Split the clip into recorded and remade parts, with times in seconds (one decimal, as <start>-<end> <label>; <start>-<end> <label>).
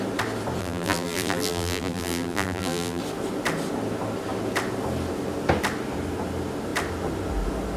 0.0-0.6 recorded; 0.6-3.0 remade; 3.0-7.8 recorded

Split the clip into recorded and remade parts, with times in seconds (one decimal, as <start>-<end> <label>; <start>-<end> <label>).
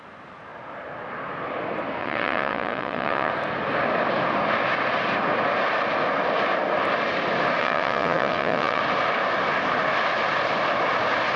0.0-2.0 recorded; 2.0-3.3 remade; 3.3-7.6 recorded; 7.6-8.8 remade; 8.8-11.4 recorded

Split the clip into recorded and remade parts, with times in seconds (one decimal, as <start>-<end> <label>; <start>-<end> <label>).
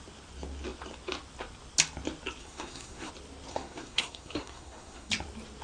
0.0-2.4 recorded; 2.4-3.1 remade; 3.1-3.5 recorded; 3.5-5.1 remade; 5.1-5.6 recorded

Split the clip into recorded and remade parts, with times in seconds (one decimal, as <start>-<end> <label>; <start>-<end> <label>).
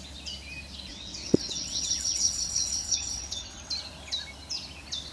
0.0-0.9 recorded; 0.9-3.7 remade; 3.7-5.1 recorded